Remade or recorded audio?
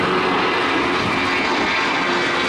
recorded